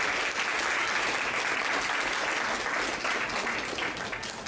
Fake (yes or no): no